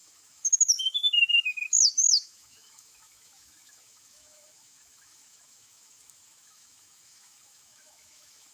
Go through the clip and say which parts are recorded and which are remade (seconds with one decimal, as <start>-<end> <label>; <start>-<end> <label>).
0.0-8.5 remade